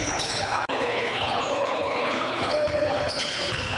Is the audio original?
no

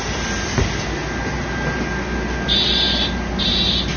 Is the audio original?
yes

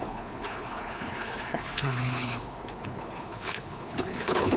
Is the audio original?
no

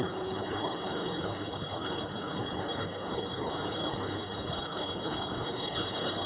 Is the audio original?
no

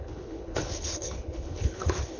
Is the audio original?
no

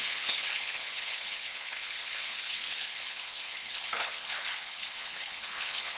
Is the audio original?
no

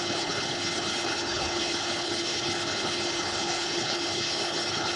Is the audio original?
no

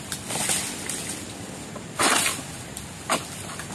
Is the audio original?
yes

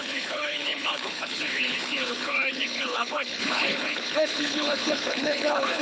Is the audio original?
no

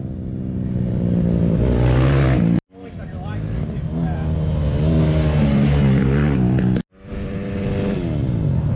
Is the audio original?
yes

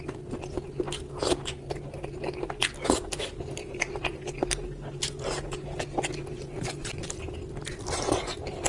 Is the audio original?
yes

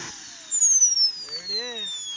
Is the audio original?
yes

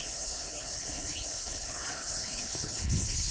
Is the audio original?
no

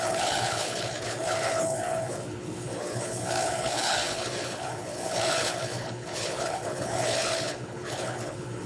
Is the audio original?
no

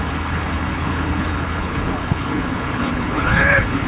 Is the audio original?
no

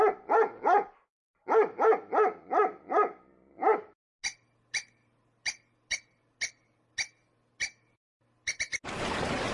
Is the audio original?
yes